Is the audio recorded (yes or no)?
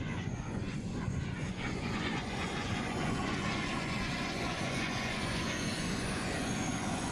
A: no